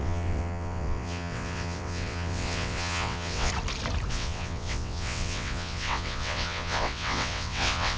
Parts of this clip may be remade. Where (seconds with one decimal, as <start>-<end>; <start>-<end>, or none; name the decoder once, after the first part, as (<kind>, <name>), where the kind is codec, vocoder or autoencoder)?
0.0-3.5 (vocoder, WaveNeXt); 4.1-8.0

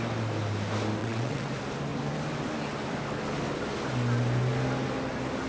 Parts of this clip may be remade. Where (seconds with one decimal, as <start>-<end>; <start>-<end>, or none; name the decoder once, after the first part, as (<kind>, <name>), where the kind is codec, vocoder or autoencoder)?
1.0-1.5 (vocoder, WaveNeXt)

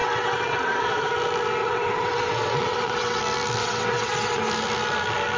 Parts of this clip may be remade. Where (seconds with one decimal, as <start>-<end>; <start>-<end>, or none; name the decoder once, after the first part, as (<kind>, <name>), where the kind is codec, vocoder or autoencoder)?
0.0-1.1 (vocoder, WaveNeXt); 1.6-3.2; 3.6-4.4